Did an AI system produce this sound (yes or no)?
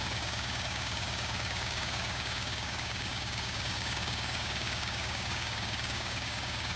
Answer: yes